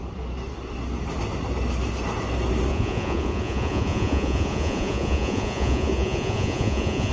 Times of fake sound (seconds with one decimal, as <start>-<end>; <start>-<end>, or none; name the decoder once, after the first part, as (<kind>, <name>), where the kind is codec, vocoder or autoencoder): 2.7-7.1 (vocoder, Vocos)